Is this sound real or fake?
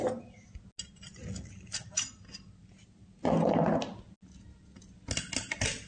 real